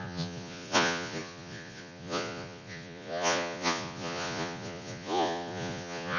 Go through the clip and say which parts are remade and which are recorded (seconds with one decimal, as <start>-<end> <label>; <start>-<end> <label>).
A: 0.0-6.2 remade